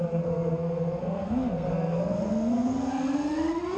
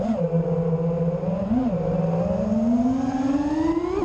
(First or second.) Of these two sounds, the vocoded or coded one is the first